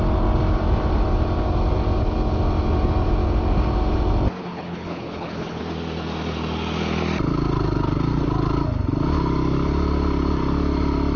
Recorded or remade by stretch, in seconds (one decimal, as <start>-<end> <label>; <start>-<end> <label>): 0.0-4.4 recorded; 4.4-5.6 remade; 5.6-11.2 recorded